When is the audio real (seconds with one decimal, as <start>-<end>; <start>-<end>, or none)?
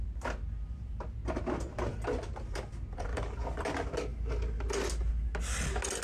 0.0-3.1; 3.6-6.0